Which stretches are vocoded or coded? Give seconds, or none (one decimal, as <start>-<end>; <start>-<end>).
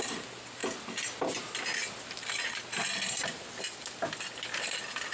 none